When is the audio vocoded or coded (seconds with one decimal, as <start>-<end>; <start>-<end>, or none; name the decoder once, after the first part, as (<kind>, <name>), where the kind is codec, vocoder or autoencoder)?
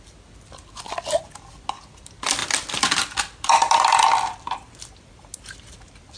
none